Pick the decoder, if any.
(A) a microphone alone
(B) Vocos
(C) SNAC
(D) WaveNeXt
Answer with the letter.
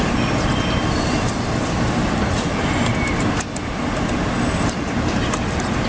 A